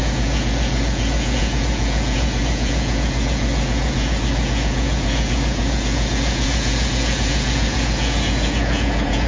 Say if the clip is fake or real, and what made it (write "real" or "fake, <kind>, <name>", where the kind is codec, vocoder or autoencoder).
fake, vocoder, Vocos